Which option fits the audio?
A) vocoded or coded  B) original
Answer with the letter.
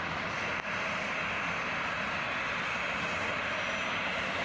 B